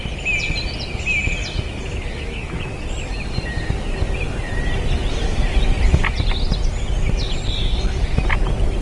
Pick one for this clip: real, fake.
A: real